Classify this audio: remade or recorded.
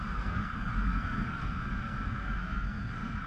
remade